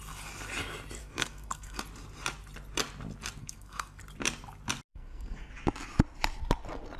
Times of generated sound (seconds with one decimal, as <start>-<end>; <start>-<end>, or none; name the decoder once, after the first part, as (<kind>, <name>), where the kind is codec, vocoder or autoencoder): 1.0-1.8 (codec, SNAC); 3.4-4.0; 4.9-5.5